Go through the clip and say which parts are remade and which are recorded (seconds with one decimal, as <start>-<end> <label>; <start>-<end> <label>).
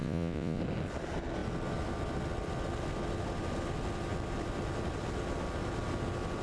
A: 0.0-0.6 remade; 0.6-6.4 recorded